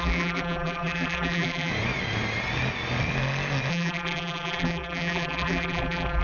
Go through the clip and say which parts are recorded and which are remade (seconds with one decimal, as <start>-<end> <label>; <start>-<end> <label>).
0.0-1.7 remade; 1.7-3.7 recorded; 3.7-6.2 remade